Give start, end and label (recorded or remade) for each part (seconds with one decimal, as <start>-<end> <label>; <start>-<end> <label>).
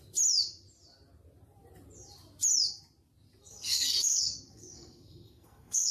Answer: 0.0-3.4 recorded; 3.4-5.9 remade